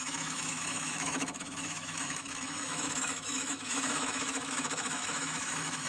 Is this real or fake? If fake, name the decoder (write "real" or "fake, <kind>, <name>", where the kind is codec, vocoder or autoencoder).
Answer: fake, autoencoder, DAC-VAE